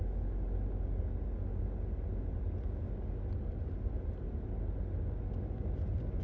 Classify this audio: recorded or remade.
recorded